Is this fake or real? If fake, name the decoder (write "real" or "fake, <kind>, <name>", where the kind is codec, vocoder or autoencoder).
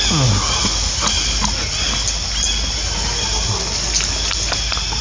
real